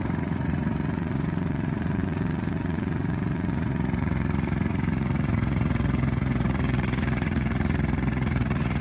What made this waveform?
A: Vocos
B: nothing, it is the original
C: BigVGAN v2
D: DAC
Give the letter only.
A